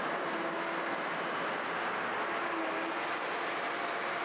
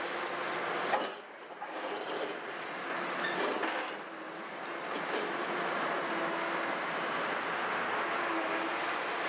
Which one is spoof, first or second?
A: second